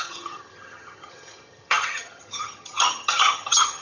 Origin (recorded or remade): remade